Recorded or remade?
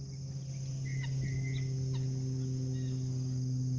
recorded